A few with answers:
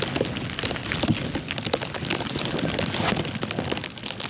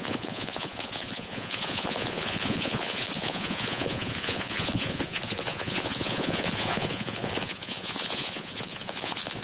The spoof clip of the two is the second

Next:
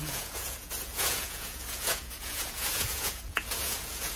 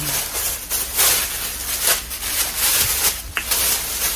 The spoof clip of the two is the first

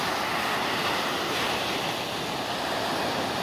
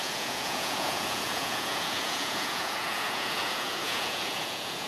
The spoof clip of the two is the second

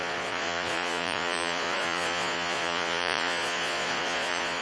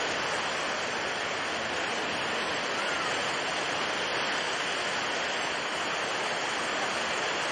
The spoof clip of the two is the first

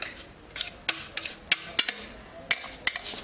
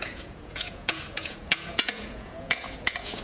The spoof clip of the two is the second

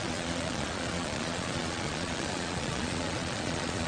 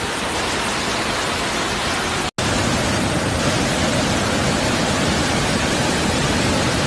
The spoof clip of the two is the first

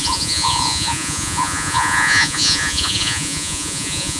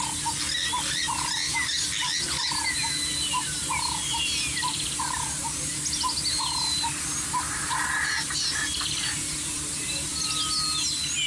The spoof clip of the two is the first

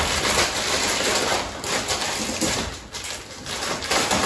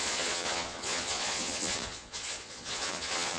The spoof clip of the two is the second